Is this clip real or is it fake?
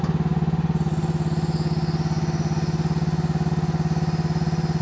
real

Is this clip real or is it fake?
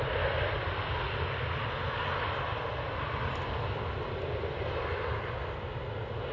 real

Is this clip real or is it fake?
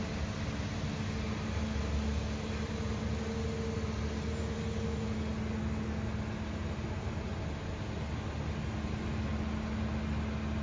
real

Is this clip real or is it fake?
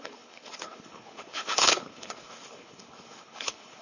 fake